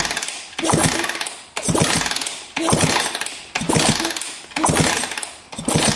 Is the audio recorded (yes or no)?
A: yes